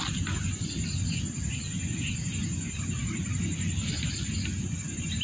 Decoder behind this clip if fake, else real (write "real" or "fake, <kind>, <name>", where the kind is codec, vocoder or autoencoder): real